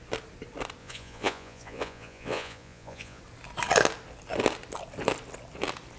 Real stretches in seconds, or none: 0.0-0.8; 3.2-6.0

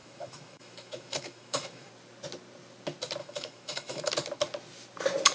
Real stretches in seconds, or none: 1.9-3.2; 4.1-5.3

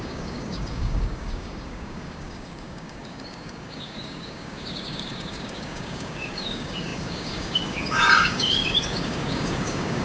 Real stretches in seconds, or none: none

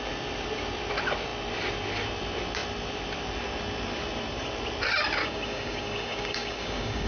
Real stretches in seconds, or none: 0.0-5.2

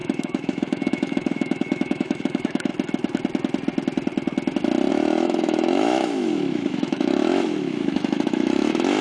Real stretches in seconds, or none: 2.7-4.9

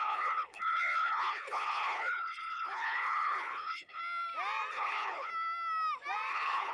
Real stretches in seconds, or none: 4.0-4.7; 5.3-6.3

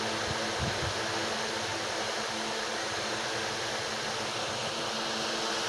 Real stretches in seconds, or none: 0.0-5.7

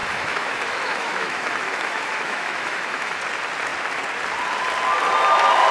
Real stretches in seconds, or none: 3.2-5.7